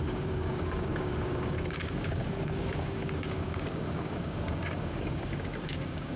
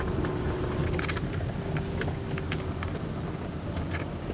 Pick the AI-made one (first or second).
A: first